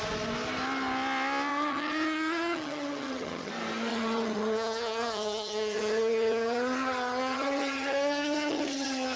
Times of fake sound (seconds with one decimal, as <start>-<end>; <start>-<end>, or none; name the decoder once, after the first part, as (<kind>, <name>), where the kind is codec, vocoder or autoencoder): 1.5-3.5 (vocoder, HiFi-GAN); 3.9-9.2